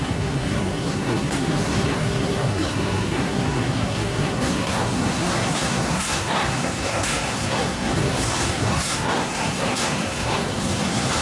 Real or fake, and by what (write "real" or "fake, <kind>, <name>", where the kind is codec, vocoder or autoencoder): fake, codec, SNAC